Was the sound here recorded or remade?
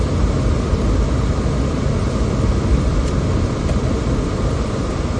remade